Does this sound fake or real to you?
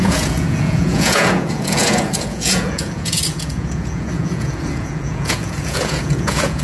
fake